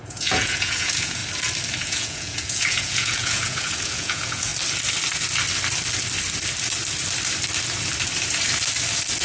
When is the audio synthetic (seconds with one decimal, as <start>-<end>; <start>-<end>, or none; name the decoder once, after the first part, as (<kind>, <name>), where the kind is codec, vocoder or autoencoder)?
0.0-1.2 (vocoder, Vocos); 1.8-4.5